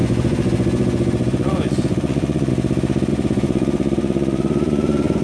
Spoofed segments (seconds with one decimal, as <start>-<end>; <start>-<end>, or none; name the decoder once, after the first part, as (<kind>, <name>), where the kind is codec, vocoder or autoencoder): 0.0-2.5 (vocoder, Vocos); 3.1-5.2